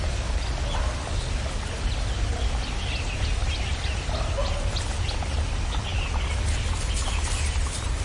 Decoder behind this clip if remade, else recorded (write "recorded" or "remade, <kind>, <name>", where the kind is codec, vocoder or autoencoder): recorded